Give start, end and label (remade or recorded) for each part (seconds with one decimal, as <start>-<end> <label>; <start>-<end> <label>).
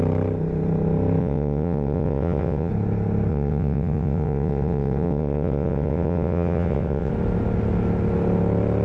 0.0-1.2 recorded; 1.2-2.7 remade; 2.7-3.3 recorded; 3.3-7.1 remade; 7.1-8.8 recorded